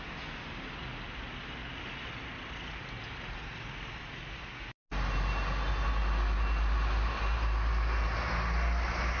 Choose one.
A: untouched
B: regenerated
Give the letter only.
A